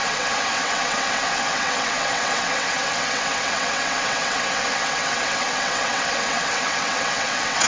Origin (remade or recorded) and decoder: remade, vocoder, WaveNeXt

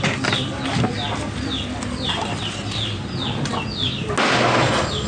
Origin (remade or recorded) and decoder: recorded